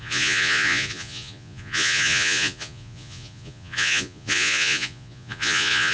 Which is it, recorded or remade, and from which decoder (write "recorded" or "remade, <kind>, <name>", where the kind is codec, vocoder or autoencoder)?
remade, vocoder, Vocos